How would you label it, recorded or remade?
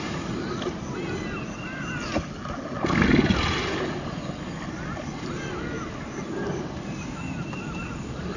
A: recorded